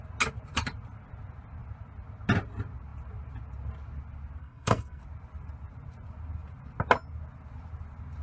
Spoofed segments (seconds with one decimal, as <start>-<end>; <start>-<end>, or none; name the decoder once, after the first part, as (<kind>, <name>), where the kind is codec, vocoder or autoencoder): 4.4-5.0 (codec, SNAC)